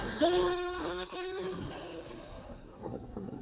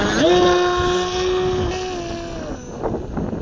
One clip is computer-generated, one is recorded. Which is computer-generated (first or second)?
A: first